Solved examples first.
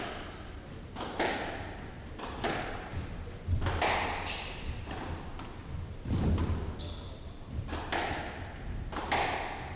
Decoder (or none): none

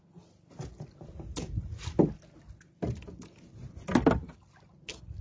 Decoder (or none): none